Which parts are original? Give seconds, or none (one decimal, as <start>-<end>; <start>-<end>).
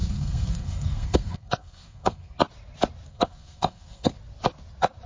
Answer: 2.4-3.1; 4.1-5.1